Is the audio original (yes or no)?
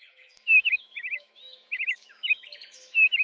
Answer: no